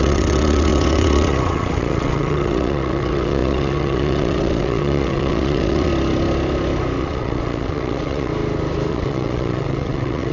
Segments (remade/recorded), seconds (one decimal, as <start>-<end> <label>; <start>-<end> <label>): 0.0-5.9 remade; 5.9-7.0 recorded; 7.0-8.3 remade; 8.3-8.9 recorded; 8.9-10.3 remade